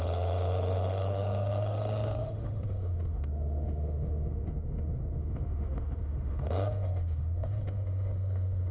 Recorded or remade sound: remade